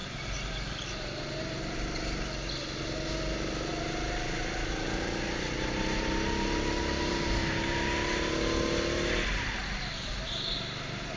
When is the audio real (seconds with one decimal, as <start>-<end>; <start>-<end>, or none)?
0.0-11.2